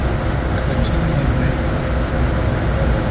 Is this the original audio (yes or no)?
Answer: yes